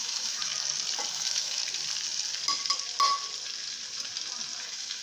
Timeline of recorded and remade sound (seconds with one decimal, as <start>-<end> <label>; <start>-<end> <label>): 0.0-0.5 remade; 0.5-1.1 recorded; 1.1-1.6 remade; 1.6-4.6 recorded; 4.6-5.0 remade